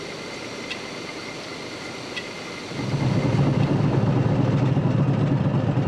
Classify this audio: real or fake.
real